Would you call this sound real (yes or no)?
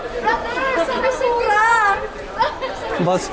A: no